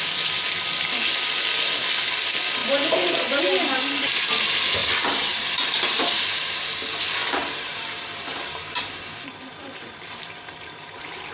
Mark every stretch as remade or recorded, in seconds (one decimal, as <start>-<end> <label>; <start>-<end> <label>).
0.0-7.2 recorded; 7.2-11.3 remade